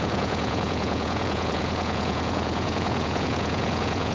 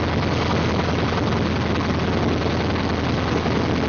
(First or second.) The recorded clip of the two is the second